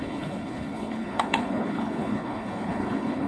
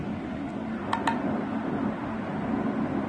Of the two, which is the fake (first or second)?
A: first